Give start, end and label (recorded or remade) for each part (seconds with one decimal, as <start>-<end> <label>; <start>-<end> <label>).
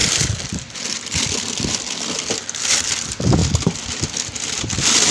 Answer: 0.0-2.6 remade; 2.6-3.4 recorded; 3.4-5.1 remade